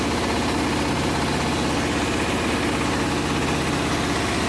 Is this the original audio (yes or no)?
yes